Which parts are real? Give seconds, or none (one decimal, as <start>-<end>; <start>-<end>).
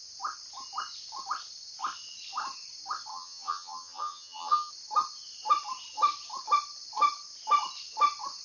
0.0-3.1; 4.7-8.4